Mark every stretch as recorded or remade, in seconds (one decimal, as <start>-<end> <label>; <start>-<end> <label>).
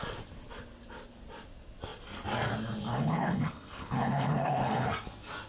0.0-2.9 recorded; 2.9-4.9 remade; 4.9-5.5 recorded